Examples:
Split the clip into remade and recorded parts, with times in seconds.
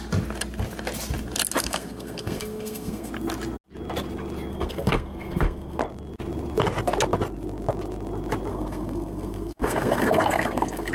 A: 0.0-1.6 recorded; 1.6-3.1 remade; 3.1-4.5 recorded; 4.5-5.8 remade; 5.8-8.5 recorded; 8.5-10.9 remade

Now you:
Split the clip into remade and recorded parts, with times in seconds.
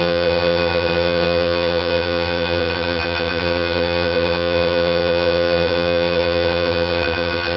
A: 0.0-7.6 remade